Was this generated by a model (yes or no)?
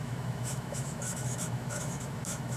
yes